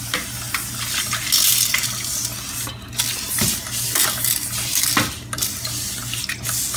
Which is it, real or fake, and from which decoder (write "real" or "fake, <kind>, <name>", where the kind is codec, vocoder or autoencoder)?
real